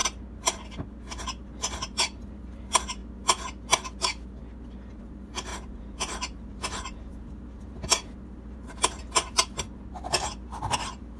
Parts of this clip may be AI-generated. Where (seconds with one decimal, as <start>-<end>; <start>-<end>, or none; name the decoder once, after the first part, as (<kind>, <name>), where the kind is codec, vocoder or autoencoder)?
1.2-3.0 (vocoder, BigVGAN v2); 5.0-11.2